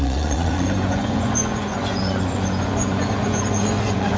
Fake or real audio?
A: fake